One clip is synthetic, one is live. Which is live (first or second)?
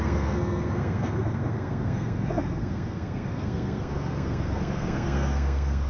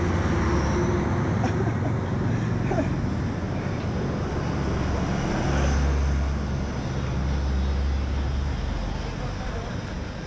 second